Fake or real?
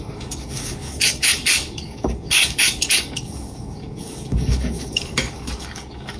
fake